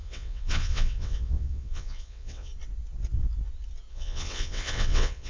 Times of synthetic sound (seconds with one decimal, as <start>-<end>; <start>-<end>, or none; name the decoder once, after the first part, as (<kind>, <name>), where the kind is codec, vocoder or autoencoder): 0.0-2.5 (vocoder, WaveNeXt); 3.9-5.3